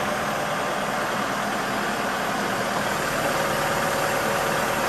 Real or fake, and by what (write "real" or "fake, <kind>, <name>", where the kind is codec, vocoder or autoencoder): real